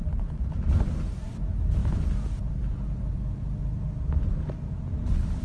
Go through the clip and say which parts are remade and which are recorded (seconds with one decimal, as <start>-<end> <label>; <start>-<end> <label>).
0.0-1.4 remade; 1.4-1.8 recorded; 1.8-4.7 remade; 4.7-5.4 recorded